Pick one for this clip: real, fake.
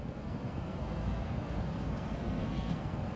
fake